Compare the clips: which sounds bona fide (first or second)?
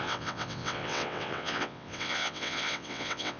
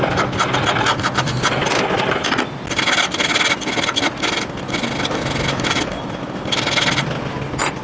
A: second